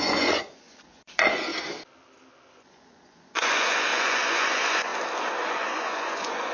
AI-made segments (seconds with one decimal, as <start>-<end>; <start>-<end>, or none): 0.0-1.5; 2.5-4.9; 5.5-6.5